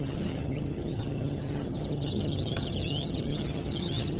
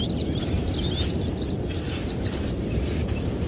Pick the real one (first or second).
second